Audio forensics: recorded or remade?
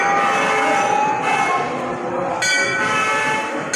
recorded